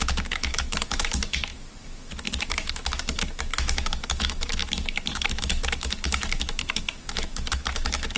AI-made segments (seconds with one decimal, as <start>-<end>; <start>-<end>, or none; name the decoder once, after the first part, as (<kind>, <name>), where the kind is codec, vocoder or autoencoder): 0.0-8.2 (autoencoder, DAC-VAE)